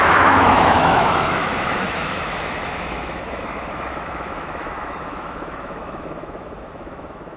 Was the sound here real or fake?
fake